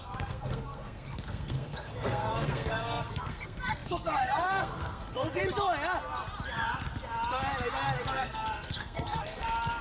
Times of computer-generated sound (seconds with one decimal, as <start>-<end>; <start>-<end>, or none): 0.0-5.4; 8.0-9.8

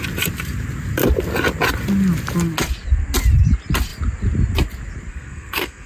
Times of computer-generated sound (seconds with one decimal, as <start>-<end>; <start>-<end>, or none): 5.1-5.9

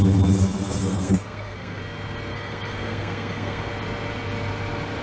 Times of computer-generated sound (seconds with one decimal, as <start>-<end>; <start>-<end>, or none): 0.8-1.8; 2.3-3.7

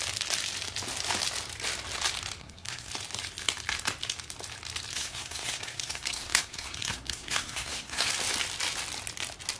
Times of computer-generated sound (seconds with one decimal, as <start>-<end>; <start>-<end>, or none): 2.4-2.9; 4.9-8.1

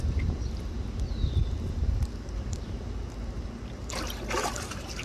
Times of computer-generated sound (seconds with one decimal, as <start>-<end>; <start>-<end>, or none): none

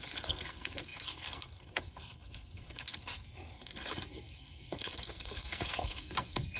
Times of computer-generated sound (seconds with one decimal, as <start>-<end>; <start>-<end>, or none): 0.0-6.6